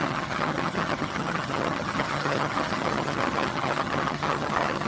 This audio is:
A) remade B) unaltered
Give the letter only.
A